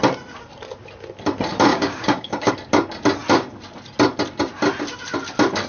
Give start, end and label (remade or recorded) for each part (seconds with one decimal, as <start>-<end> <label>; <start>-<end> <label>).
0.0-1.7 recorded; 1.7-2.5 remade; 2.5-5.7 recorded